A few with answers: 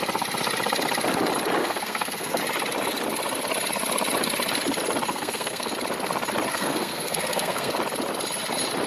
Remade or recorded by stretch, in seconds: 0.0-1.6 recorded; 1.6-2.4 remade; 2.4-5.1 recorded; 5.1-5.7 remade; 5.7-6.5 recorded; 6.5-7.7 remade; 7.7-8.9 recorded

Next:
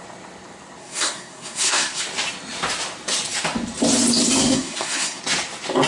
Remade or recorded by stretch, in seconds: 0.0-0.8 recorded; 0.8-2.0 remade; 2.0-4.4 recorded; 4.4-5.2 remade; 5.2-5.9 recorded

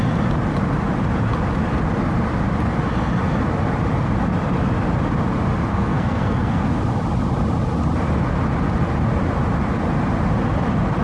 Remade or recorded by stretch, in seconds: 0.0-5.7 recorded; 5.7-6.7 remade; 6.7-11.0 recorded

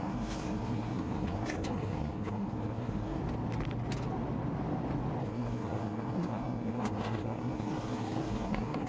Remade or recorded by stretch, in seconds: 0.0-3.2 remade; 3.2-5.2 recorded; 5.2-8.9 remade

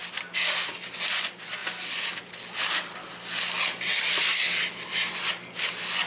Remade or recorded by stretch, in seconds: 0.0-6.1 recorded